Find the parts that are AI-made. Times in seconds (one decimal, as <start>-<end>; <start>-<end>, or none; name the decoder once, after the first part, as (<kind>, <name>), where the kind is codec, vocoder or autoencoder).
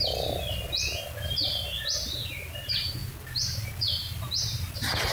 3.0-3.7 (vocoder, BigVGAN v2)